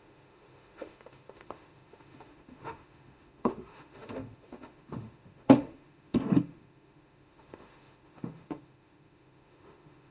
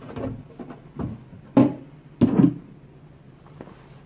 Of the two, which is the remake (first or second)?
first